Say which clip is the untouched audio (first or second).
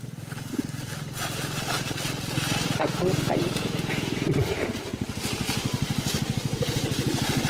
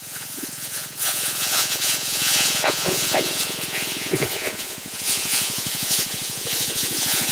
first